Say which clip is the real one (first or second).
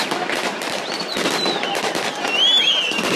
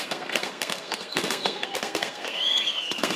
first